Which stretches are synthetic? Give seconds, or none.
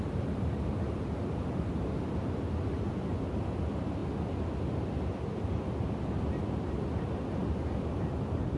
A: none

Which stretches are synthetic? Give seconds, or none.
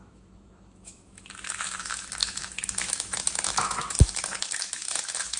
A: 0.0-5.4 (autoencoder, DAC-VAE)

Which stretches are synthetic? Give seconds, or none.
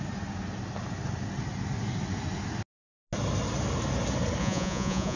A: 4.4-5.2 (vocoder, Vocos)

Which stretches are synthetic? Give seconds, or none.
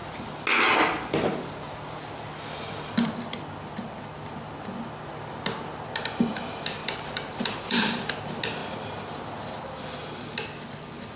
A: 6.8-8.1 (vocoder, BigVGAN v2)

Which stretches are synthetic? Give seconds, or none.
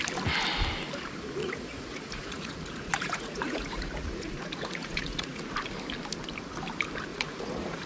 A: 1.4-5.4 (vocoder, Vocos); 7.1-7.9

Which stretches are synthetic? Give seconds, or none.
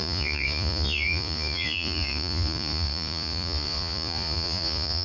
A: 0.0-5.0 (vocoder, Vocos)